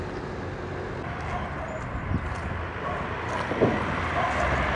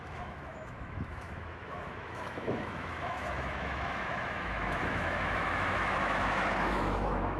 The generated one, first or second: second